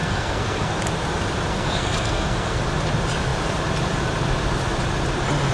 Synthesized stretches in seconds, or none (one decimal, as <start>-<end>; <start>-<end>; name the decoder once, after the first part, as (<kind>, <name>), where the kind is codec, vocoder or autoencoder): 0.0-0.8 (codec, SNAC); 1.5-2.6